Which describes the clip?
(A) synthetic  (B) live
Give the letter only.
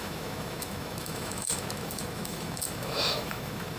A